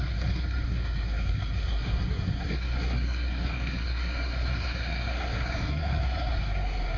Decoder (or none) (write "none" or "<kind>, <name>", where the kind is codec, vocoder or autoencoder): codec, SNAC